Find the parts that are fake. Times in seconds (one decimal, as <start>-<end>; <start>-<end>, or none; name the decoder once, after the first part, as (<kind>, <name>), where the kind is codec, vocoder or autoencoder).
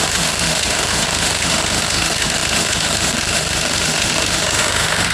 0.0-5.1 (autoencoder, DAC-VAE)